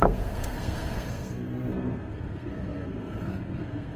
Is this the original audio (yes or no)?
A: no